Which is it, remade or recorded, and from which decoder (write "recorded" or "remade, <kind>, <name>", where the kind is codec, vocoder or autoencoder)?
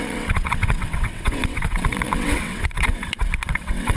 remade, vocoder, WaveNeXt